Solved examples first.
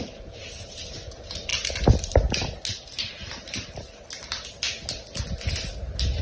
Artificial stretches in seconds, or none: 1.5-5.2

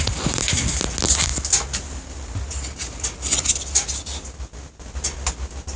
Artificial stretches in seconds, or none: none

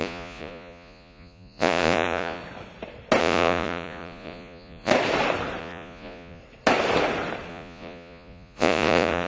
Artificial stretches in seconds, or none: 0.0-2.4; 3.2-4.9; 5.6-6.4; 7.5-9.3